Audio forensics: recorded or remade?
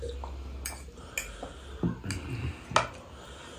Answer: recorded